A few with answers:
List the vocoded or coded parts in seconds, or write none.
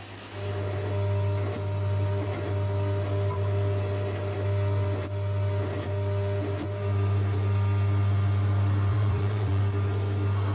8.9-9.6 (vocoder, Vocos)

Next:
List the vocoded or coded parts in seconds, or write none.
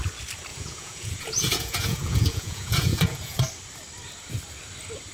0.5-3.4 (vocoder, Vocos)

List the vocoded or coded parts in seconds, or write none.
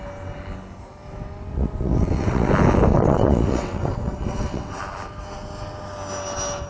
1.5-2.5 (vocoder, WaveNeXt); 2.9-4.8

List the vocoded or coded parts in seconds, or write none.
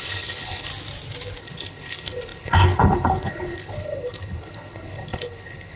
0.0-0.7 (codec, HILCodec); 1.4-5.8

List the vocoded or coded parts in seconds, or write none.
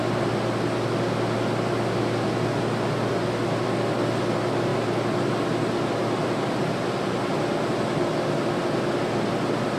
none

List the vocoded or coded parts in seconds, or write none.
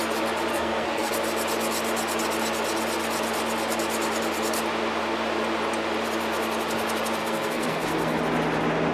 0.5-1.1 (codec, SNAC); 7.2-8.2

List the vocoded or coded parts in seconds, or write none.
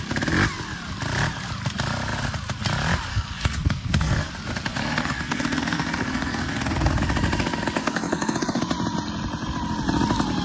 3.1-4.3 (codec, SNAC); 4.7-6.9; 7.8-8.6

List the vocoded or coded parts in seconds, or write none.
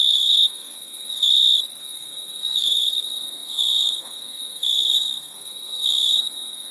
0.0-1.3 (codec, SNAC); 1.8-6.7